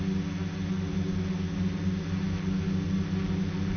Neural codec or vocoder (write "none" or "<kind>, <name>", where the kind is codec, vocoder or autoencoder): none